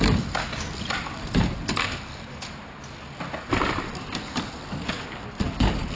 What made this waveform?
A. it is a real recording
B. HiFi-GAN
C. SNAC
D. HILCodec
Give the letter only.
A